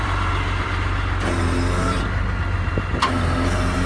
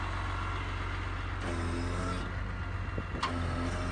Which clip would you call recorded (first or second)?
second